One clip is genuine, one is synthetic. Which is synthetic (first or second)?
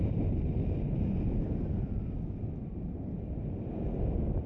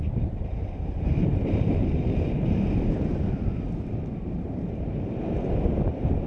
second